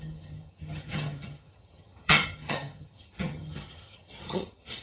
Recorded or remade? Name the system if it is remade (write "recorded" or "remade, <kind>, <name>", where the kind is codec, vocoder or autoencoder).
remade, vocoder, HiFi-GAN